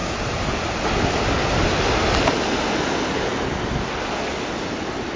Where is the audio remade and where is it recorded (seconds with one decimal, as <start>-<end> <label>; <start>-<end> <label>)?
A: 0.0-0.8 remade; 0.8-5.2 recorded